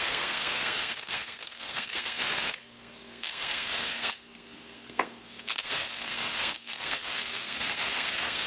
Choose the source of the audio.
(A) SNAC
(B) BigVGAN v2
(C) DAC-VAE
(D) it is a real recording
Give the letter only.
A